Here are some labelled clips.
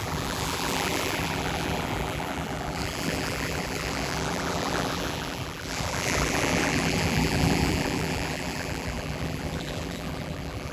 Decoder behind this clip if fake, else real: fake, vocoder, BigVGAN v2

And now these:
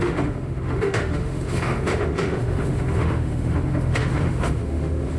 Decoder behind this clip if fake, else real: fake, autoencoder, DAC-VAE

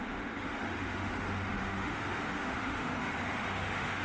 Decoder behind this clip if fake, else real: fake, autoencoder, DAC-VAE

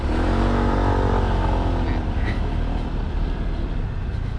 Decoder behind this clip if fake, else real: real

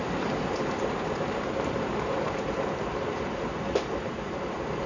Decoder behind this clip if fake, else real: fake, vocoder, BigVGAN v2